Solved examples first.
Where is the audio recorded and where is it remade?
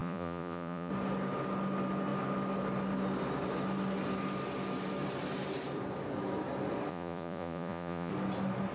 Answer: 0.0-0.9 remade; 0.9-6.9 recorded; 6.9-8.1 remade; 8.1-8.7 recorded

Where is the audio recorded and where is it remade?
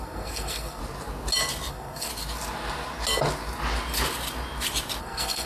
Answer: 0.0-0.8 remade; 0.8-1.7 recorded; 1.7-2.1 remade; 2.1-5.0 recorded; 5.0-5.5 remade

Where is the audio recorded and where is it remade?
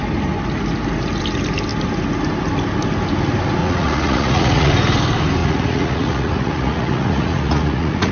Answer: 0.0-3.6 recorded; 3.6-4.7 remade; 4.7-5.4 recorded; 5.4-8.1 remade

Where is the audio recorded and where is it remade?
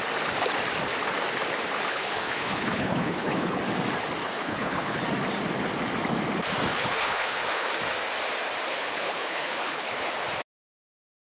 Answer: 0.0-1.9 recorded; 1.9-3.6 remade; 3.6-4.2 recorded; 4.2-5.0 remade; 5.0-6.7 recorded; 6.7-7.7 remade; 7.7-8.7 recorded; 8.7-10.1 remade; 10.1-11.2 recorded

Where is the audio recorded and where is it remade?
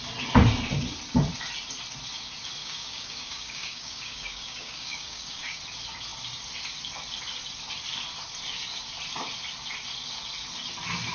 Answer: 0.0-2.6 recorded; 2.6-5.6 remade; 5.6-11.1 recorded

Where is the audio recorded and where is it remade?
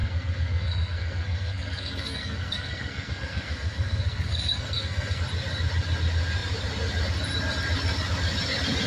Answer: 0.0-5.2 remade; 5.2-8.9 recorded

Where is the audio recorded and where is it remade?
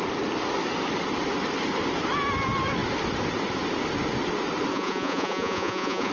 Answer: 0.0-4.7 recorded; 4.7-6.1 remade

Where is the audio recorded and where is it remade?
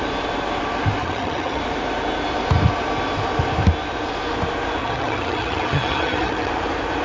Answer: 0.0-1.0 recorded; 1.0-1.6 remade; 1.6-4.8 recorded; 4.8-6.5 remade; 6.5-7.0 recorded